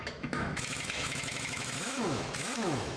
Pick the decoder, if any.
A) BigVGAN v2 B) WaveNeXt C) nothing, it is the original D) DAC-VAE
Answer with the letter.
D